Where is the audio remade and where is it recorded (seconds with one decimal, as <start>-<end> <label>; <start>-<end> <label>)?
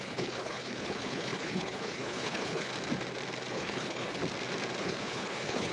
0.0-2.7 remade; 2.7-3.5 recorded; 3.5-4.2 remade; 4.2-4.8 recorded; 4.8-5.7 remade